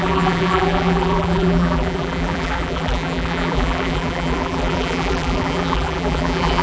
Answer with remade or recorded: remade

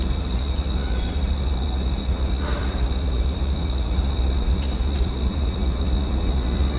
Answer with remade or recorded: remade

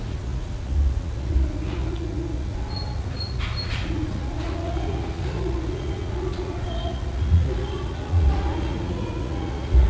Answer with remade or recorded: remade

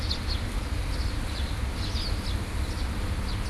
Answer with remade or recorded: recorded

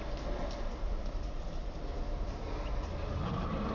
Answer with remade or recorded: recorded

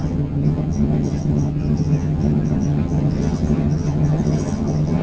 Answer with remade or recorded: remade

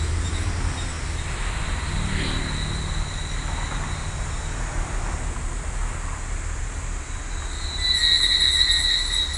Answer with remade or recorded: recorded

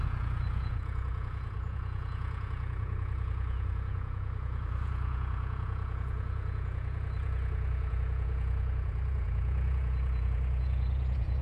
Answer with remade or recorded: remade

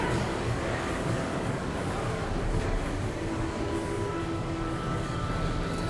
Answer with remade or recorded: remade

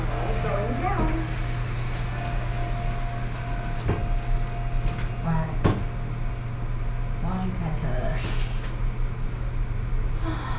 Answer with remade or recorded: recorded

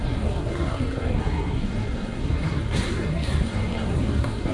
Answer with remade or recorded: remade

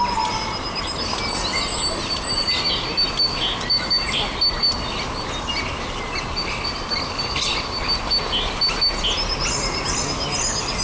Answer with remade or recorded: recorded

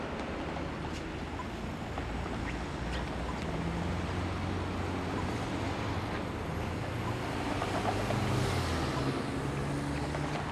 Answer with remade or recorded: recorded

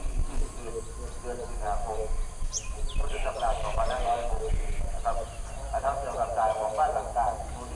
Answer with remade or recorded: recorded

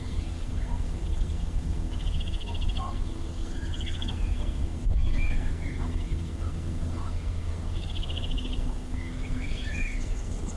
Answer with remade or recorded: remade